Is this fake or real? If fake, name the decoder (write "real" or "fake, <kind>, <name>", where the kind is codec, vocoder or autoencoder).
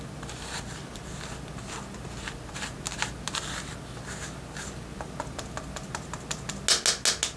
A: real